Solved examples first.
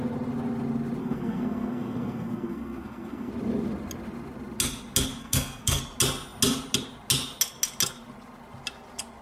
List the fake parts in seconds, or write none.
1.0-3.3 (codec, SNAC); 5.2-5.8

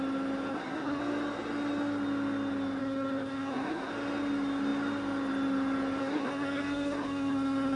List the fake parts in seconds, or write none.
0.5-1.0 (codec, SNAC); 2.8-3.9; 6.0-7.8